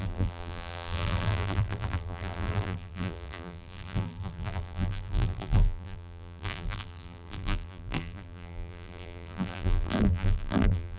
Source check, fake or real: fake